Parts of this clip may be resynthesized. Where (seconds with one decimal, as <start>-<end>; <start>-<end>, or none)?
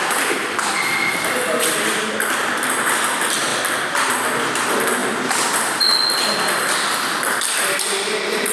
0.4-1.9; 3.5-4.1; 5.0-5.8